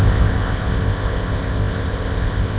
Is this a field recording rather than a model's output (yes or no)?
no